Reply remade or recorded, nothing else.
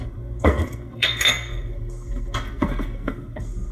remade